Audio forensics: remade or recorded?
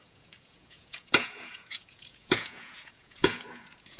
remade